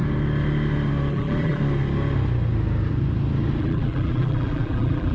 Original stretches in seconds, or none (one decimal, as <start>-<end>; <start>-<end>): 0.0-1.1; 1.6-3.6